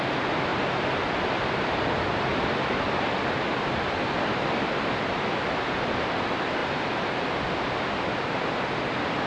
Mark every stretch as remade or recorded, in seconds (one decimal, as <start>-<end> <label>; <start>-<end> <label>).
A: 0.0-9.3 recorded